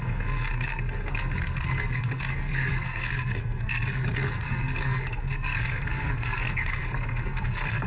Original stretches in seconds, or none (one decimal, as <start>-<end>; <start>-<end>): none

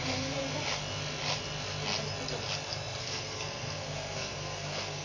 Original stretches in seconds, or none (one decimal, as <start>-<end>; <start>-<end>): 0.4-3.0

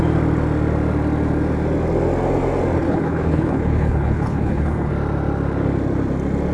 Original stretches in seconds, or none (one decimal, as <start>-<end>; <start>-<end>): 0.0-2.8; 4.9-6.5

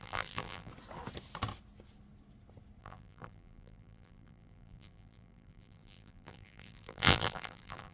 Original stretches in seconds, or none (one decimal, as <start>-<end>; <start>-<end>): 0.7-2.8

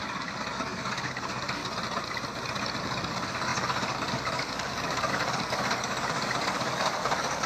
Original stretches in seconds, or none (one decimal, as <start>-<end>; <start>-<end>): 1.6-2.8

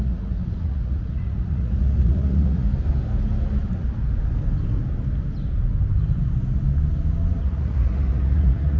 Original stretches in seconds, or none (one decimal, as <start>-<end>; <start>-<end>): 2.7-7.4

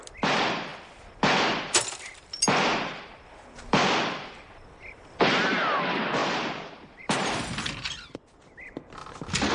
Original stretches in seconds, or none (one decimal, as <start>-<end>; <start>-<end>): 0.7-1.6; 6.2-7.0

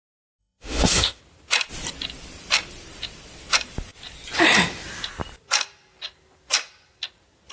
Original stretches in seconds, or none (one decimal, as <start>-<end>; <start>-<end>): 0.0-0.4; 1.2-7.5